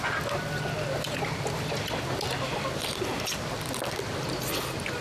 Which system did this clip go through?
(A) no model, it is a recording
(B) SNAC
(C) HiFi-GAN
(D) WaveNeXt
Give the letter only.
A